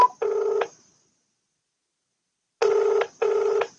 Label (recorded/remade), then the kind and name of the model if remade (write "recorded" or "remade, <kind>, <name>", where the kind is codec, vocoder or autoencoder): recorded